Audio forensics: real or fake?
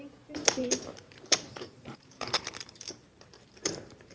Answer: fake